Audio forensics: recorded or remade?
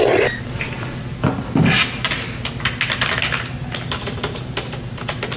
recorded